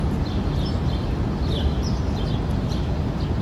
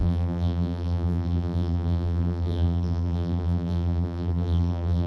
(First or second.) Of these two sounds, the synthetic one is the second